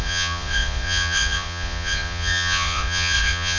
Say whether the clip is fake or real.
fake